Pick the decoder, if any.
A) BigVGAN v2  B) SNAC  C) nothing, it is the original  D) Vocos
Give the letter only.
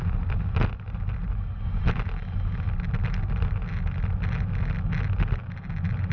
C